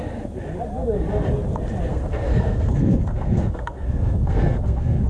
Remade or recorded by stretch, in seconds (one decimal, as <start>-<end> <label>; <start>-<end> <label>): 0.0-1.9 recorded; 1.9-5.1 remade